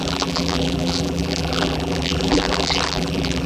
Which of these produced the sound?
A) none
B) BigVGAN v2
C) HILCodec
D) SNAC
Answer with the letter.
B